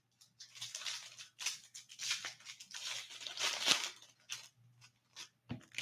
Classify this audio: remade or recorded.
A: recorded